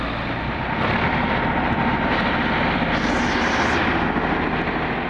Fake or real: real